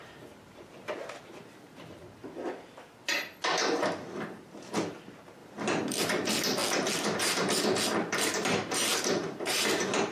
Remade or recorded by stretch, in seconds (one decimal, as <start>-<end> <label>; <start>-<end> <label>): 0.0-2.0 remade; 2.0-4.7 recorded; 4.7-5.4 remade; 5.4-6.0 recorded; 6.0-6.6 remade; 6.6-7.2 recorded; 7.2-10.1 remade